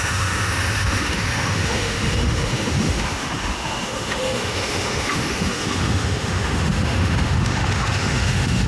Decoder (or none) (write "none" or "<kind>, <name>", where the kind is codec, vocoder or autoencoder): autoencoder, DAC-VAE